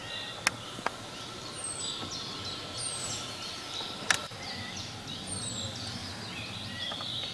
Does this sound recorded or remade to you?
recorded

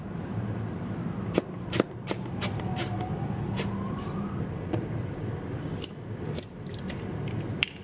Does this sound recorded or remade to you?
remade